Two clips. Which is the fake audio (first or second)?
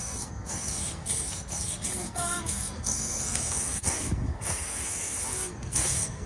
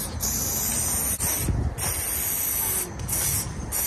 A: first